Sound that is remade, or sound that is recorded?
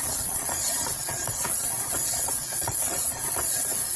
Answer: remade